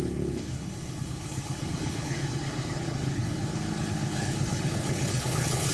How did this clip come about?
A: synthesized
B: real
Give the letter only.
A